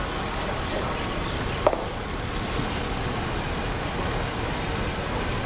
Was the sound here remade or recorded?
recorded